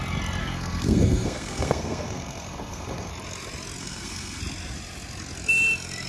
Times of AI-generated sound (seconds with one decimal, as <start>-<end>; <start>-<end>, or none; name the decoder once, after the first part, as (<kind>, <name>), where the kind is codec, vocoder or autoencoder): 0.4-3.1 (codec, SNAC); 3.8-4.4